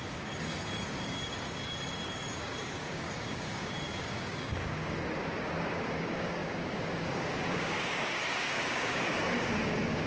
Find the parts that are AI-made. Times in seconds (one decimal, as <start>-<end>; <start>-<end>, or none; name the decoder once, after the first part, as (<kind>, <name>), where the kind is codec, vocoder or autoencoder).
0.0-10.1 (codec, DAC)